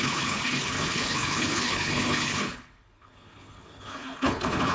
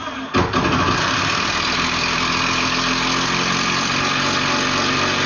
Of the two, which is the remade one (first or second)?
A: first